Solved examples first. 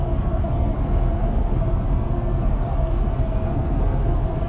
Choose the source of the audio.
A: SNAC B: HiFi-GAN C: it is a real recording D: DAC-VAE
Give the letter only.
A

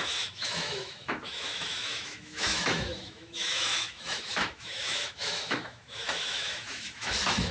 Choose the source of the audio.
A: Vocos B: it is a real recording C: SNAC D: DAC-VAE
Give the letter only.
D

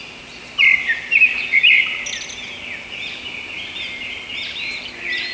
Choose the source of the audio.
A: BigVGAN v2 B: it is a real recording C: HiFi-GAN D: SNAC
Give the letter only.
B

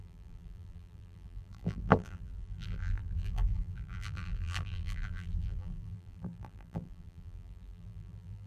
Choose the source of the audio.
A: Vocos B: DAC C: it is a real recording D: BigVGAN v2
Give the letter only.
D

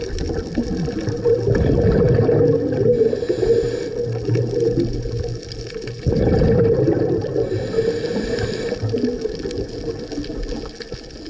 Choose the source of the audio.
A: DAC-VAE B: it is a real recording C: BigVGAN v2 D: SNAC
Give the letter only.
B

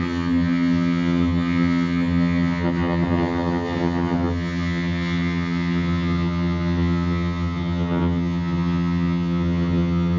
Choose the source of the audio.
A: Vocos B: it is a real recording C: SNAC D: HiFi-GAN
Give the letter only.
D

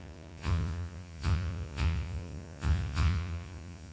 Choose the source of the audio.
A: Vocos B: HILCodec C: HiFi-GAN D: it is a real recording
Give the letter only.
A